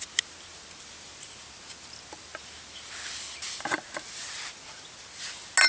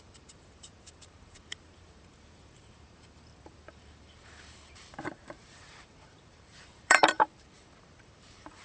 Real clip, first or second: first